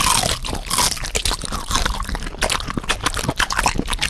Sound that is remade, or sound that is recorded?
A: recorded